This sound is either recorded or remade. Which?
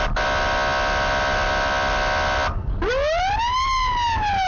recorded